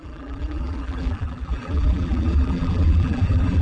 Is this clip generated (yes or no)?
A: yes